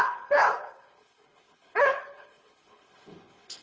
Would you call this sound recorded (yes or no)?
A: no